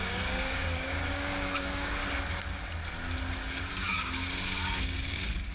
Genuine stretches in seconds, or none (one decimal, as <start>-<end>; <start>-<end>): 2.0-3.7